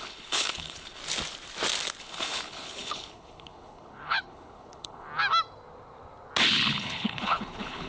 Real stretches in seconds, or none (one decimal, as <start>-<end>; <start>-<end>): 1.0-2.0; 5.1-6.5